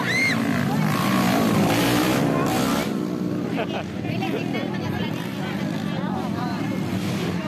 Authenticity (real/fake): fake